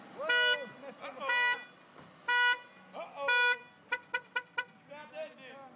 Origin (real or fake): real